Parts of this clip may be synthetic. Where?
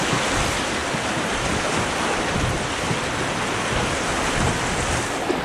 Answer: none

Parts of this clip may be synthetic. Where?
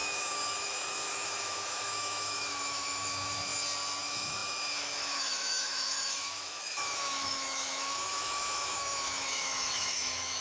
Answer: 0.0-3.5 (autoencoder, DAC-VAE); 4.0-10.4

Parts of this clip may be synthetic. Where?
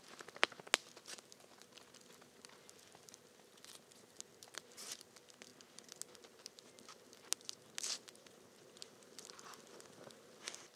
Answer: none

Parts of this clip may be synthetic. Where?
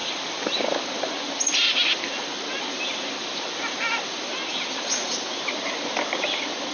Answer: none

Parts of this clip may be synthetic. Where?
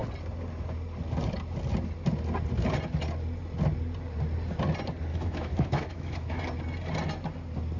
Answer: 5.1-6.4 (autoencoder, DAC-VAE)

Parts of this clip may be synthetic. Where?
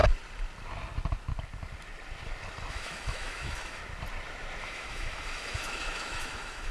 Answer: 2.7-3.8 (autoencoder, DAC-VAE); 4.6-6.7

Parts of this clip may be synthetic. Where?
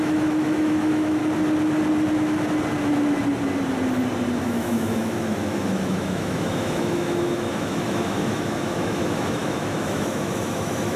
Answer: 0.0-1.2 (autoencoder, DAC-VAE); 4.4-11.0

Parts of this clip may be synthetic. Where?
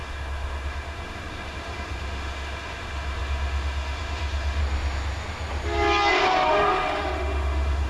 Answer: 0.0-4.6 (autoencoder, DAC-VAE); 6.1-7.9